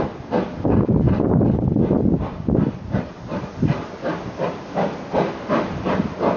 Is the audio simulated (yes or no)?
no